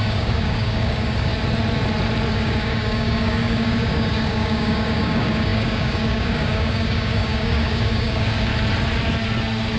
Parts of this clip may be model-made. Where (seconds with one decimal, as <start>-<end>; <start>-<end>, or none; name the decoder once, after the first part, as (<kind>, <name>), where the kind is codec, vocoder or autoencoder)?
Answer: 0.0-1.3 (codec, DAC); 2.3-8.5